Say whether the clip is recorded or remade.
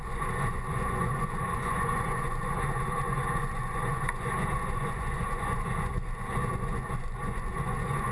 remade